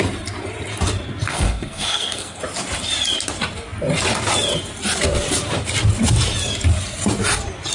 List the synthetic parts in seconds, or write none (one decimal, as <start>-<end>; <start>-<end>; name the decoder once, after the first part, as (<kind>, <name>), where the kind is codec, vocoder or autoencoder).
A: 1.3-2.4 (codec, SNAC)